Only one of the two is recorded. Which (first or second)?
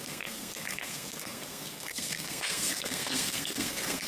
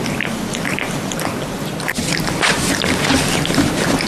second